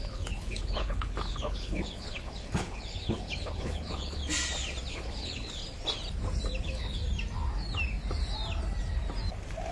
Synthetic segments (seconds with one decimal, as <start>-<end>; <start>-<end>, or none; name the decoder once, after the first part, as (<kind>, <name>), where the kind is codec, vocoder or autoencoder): 0.0-4.2 (codec, HILCodec); 4.9-5.6; 6.6-7.0